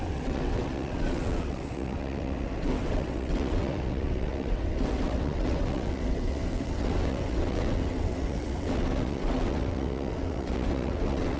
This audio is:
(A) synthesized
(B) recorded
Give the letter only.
A